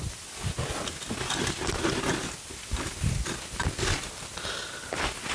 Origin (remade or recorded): recorded